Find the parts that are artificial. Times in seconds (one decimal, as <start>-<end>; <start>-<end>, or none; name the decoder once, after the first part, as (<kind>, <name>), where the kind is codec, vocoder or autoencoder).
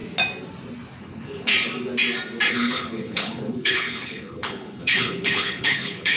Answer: 1.0-1.5 (codec, HILCodec); 2.5-6.2